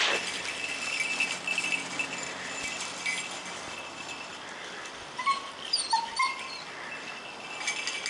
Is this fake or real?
real